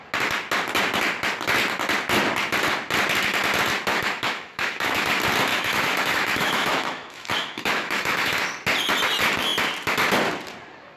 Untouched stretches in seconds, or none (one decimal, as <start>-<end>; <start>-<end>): 0.0-3.9; 5.1-5.5; 8.4-11.0